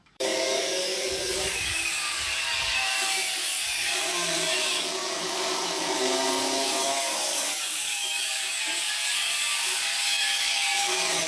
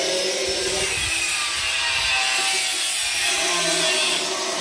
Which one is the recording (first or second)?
second